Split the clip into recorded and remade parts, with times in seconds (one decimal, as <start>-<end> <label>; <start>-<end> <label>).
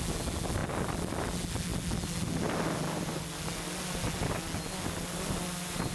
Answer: 0.0-5.9 recorded